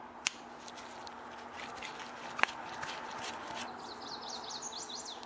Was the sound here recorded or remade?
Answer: recorded